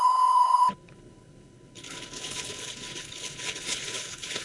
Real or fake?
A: fake